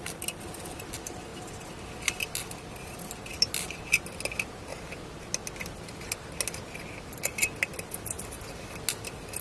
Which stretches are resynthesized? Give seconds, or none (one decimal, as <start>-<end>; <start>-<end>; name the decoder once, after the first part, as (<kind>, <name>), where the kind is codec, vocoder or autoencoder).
none